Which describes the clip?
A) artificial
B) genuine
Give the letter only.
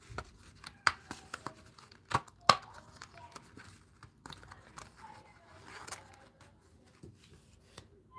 B